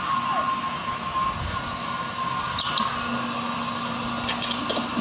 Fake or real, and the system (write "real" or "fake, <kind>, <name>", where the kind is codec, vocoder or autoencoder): real